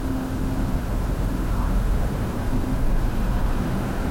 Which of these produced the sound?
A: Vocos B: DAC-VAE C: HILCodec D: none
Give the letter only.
B